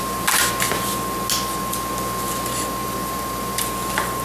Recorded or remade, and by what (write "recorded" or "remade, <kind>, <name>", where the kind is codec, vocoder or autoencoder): recorded